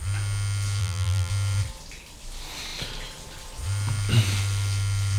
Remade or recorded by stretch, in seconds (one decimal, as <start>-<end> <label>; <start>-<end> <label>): 0.0-0.8 recorded; 0.8-1.3 remade; 1.3-5.2 recorded